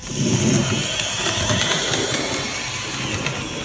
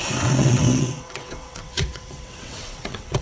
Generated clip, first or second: second